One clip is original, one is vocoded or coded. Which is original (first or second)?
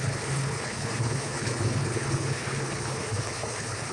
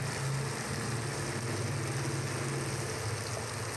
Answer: second